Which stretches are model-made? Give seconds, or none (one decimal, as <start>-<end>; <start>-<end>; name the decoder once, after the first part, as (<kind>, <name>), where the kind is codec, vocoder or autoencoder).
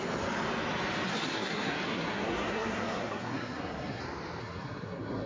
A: 1.1-4.0 (codec, SNAC); 4.4-5.3